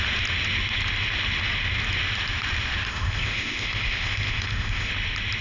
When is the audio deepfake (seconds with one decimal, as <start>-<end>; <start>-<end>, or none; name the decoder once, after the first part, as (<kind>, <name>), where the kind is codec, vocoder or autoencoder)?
2.9-4.9 (codec, ZipCodec)